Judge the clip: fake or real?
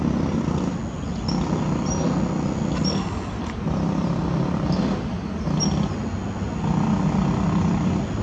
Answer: real